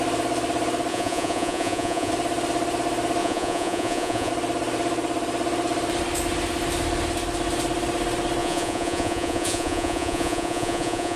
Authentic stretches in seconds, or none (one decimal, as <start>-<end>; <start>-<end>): 0.0-0.9; 2.1-3.2; 4.3-8.4